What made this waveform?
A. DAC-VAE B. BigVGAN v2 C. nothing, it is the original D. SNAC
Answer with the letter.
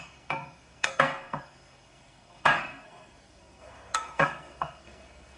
D